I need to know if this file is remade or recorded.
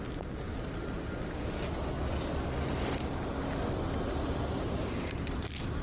recorded